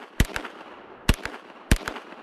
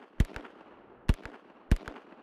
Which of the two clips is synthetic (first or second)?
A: first